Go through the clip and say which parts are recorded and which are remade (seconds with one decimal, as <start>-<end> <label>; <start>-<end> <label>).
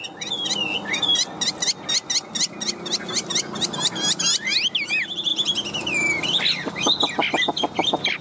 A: 0.0-8.2 recorded